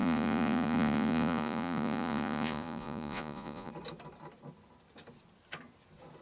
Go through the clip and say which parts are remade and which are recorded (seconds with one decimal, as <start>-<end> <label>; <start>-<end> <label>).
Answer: 0.0-3.7 remade; 3.7-6.2 recorded